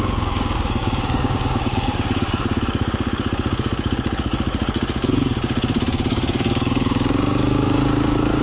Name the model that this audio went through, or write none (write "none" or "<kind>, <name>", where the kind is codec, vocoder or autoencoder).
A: codec, DAC